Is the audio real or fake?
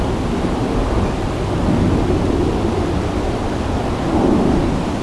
real